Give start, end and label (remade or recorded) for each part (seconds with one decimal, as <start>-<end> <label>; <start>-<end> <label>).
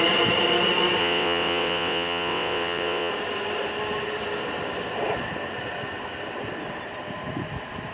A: 0.0-1.0 recorded; 1.0-3.1 remade; 3.1-7.9 recorded